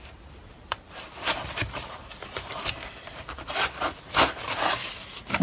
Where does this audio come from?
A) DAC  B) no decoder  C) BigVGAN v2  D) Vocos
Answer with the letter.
C